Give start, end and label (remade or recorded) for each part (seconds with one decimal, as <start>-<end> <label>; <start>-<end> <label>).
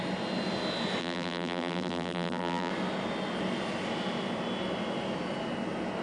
0.0-1.0 recorded; 1.0-2.7 remade; 2.7-6.0 recorded